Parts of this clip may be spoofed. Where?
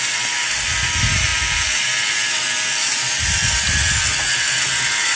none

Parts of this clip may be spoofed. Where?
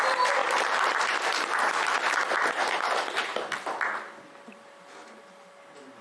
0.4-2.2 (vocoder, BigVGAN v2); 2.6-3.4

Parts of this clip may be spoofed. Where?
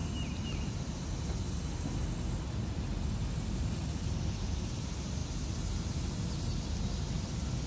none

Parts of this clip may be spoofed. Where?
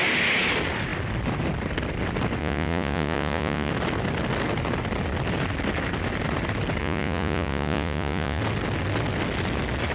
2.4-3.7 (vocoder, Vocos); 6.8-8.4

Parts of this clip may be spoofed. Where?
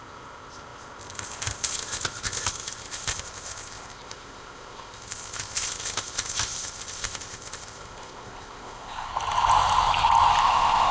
0.0-9.1 (codec, ZipCodec); 10.4-10.9